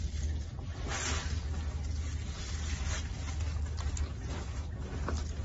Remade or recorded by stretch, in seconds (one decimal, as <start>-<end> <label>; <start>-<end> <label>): 0.0-5.4 recorded